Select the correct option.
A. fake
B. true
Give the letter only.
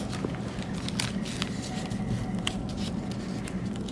B